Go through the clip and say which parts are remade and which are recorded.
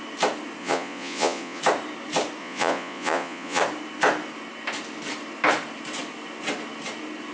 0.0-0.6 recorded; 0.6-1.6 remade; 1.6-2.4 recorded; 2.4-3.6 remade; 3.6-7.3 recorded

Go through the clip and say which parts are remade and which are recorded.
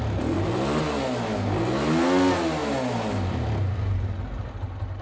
0.0-5.0 recorded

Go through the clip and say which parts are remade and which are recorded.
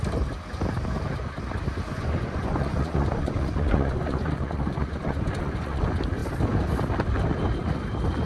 0.0-1.9 recorded; 1.9-5.8 remade; 5.8-8.3 recorded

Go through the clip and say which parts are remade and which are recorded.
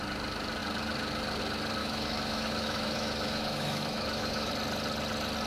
0.0-1.8 recorded; 1.8-4.5 remade; 4.5-5.5 recorded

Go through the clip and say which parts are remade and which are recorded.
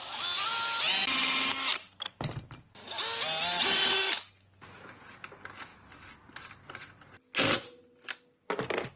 0.0-9.0 recorded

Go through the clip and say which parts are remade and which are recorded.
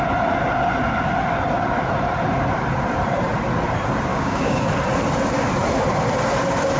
0.0-4.1 recorded; 4.1-4.6 remade; 4.6-6.8 recorded